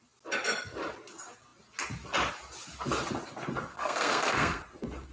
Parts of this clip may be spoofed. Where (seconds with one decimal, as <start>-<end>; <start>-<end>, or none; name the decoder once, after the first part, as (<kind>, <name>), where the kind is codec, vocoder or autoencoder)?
3.7-4.6 (codec, SNAC)

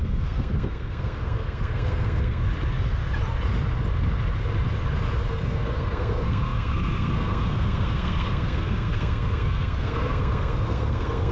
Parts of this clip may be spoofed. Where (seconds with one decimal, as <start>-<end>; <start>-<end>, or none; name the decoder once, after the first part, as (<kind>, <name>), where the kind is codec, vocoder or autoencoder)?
0.0-2.4 (codec, SNAC); 5.3-11.3